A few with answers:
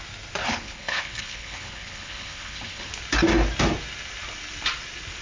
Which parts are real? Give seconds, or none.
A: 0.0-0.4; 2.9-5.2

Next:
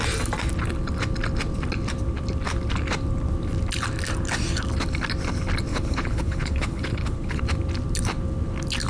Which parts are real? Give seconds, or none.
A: 0.0-5.7; 7.4-8.9